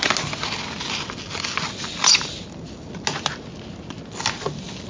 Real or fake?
real